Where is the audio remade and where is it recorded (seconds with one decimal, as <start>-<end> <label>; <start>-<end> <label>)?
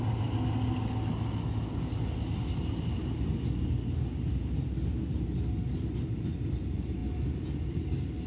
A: 0.0-8.3 recorded